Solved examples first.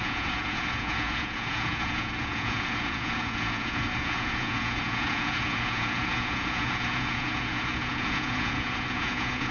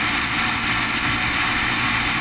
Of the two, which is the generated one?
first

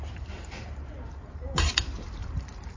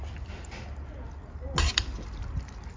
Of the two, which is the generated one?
first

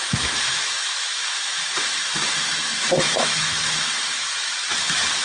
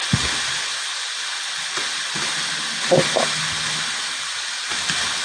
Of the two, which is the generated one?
first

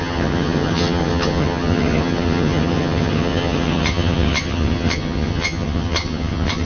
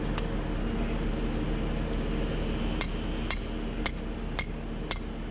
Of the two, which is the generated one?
first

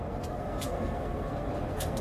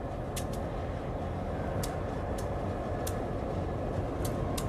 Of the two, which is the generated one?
first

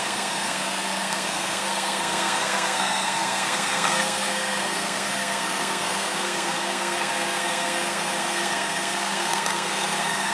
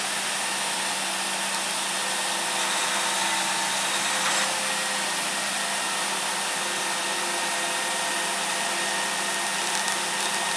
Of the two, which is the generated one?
first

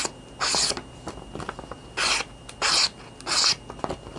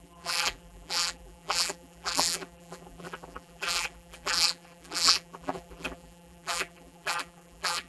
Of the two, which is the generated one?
second